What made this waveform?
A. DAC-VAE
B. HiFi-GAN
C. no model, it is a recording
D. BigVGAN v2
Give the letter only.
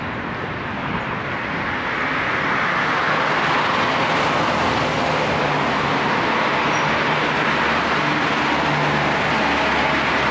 C